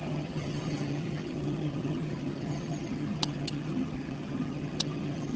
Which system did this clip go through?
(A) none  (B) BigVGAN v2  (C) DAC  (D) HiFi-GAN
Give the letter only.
D